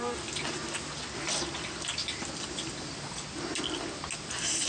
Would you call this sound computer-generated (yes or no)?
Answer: no